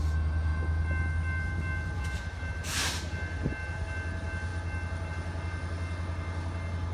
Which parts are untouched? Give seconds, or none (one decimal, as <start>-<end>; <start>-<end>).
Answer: 0.0-6.9